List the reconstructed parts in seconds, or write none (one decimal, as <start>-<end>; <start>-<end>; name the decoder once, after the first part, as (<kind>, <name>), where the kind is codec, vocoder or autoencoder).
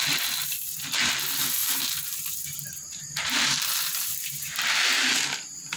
0.4-0.9 (vocoder, BigVGAN v2); 1.6-5.1